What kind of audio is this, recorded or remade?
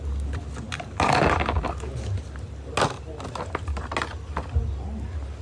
recorded